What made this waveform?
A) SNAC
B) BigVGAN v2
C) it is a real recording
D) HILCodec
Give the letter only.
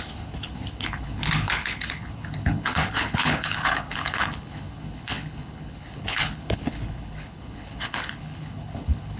D